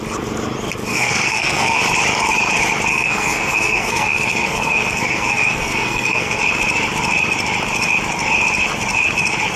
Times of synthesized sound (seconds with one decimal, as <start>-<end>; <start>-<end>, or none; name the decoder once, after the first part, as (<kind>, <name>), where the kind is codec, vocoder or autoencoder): 0.9-1.8 (codec, SNAC); 2.9-6.4